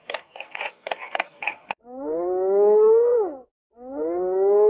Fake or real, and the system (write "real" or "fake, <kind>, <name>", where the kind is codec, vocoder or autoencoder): fake, codec, SNAC